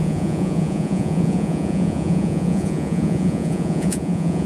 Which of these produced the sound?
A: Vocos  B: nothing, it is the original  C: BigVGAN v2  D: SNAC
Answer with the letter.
A